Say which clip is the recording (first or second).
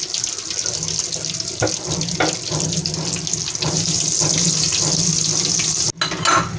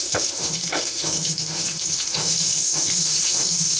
first